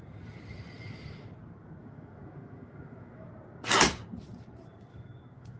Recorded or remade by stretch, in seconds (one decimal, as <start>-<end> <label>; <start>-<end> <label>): 0.0-1.8 recorded; 1.8-3.3 remade; 3.3-4.9 recorded; 4.9-5.6 remade